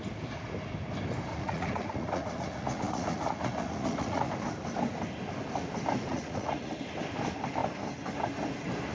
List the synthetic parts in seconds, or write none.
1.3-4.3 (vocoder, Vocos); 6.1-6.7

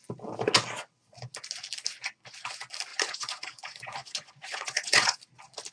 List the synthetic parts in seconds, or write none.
2.9-5.2 (vocoder, Vocos)

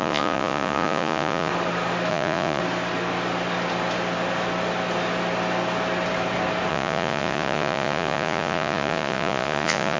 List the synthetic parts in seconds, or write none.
0.0-1.5 (vocoder, Vocos); 2.1-2.6; 6.7-10.0

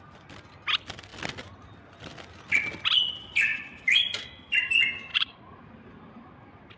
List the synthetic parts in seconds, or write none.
5.1-5.7 (vocoder, Vocos)

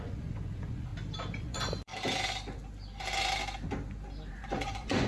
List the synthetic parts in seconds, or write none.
0.0-0.9 (vocoder, Vocos); 1.4-1.9; 4.3-5.1